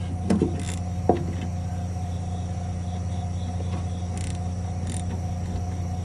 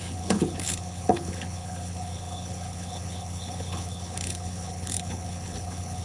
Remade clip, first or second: second